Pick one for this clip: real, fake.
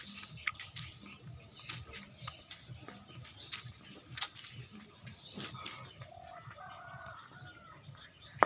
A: real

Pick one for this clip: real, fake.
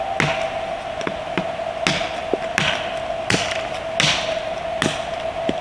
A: real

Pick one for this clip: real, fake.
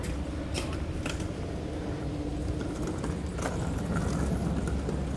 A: real